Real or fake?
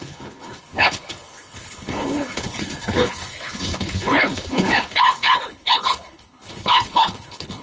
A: fake